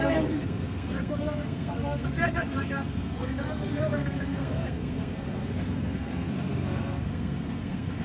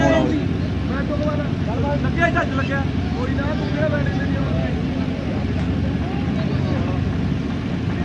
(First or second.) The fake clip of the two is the first